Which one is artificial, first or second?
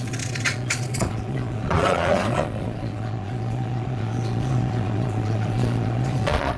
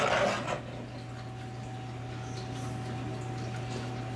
first